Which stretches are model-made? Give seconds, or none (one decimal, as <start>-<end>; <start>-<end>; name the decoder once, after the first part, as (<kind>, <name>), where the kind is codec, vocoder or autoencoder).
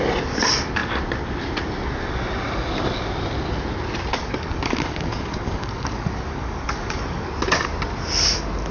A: 4.1-7.3 (codec, DAC)